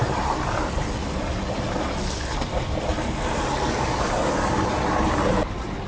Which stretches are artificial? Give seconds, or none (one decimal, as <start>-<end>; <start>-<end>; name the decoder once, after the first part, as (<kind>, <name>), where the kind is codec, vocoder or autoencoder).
none